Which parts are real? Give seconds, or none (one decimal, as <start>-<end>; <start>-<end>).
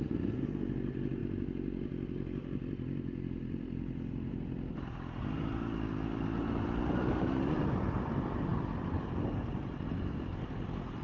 0.0-8.5; 9.6-11.0